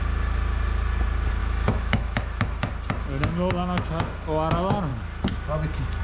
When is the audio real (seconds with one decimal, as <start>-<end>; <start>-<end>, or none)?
0.0-1.4; 2.7-6.0